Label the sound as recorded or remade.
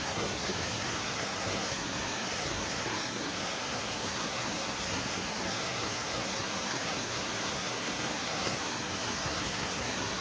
remade